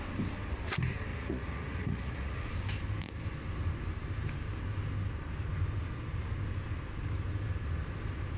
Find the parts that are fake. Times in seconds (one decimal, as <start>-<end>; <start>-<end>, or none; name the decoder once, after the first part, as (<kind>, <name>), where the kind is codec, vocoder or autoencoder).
1.1-2.5 (vocoder, Vocos)